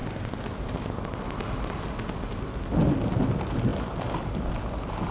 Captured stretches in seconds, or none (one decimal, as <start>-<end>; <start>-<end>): 0.0-5.1